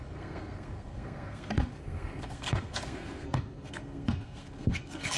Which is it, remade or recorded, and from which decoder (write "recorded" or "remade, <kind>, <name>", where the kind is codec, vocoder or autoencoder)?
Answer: remade, codec, SNAC